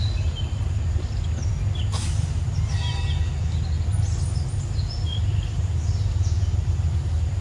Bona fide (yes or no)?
yes